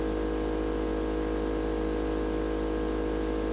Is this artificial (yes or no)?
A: no